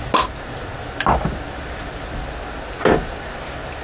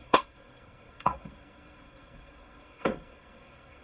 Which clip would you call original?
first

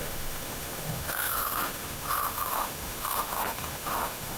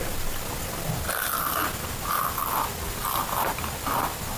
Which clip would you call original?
second